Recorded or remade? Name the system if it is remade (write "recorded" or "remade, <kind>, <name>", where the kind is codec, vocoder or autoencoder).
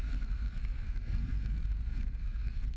remade, codec, SNAC